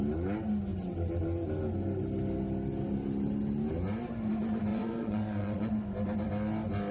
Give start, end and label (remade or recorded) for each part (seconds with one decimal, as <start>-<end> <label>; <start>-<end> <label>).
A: 0.0-4.7 recorded; 4.7-5.7 remade; 5.7-6.9 recorded